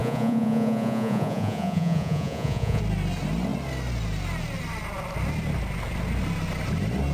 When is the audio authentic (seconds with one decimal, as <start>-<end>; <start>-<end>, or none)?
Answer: 2.8-7.1